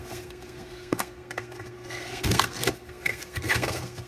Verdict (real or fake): fake